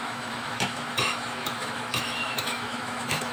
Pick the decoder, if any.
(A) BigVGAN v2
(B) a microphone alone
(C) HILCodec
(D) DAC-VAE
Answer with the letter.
D